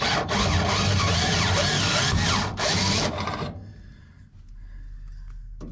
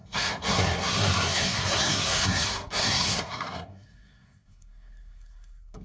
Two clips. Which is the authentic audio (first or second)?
first